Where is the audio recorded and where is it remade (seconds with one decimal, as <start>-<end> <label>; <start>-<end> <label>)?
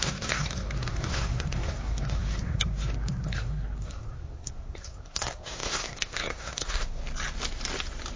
0.0-7.0 remade; 7.0-8.2 recorded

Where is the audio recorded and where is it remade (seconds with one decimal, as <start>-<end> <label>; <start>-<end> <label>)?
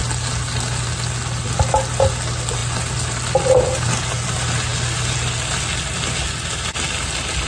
0.0-7.5 recorded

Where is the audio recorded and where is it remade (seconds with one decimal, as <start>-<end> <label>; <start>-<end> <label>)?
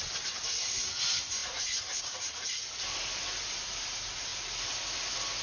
0.0-1.4 remade; 1.4-2.0 recorded; 2.0-4.3 remade; 4.3-5.4 recorded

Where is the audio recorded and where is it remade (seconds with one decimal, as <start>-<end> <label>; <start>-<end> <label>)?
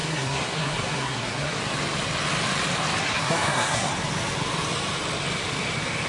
0.0-1.6 remade; 1.6-3.0 recorded; 3.0-3.9 remade; 3.9-6.1 recorded